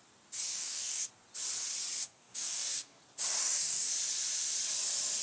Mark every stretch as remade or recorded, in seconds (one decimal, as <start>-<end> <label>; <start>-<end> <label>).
0.0-0.5 recorded; 0.5-1.1 remade; 1.1-2.0 recorded; 2.0-3.0 remade; 3.0-3.4 recorded; 3.4-3.9 remade; 3.9-5.2 recorded